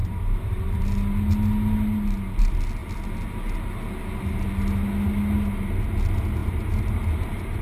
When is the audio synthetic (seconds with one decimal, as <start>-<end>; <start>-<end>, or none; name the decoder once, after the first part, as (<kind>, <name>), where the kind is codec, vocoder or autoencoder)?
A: 0.0-0.8 (vocoder, BigVGAN v2); 6.4-7.6